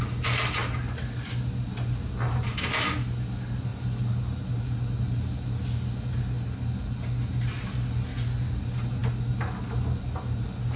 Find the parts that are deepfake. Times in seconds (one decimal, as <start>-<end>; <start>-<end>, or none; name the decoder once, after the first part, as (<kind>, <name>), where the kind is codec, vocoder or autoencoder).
none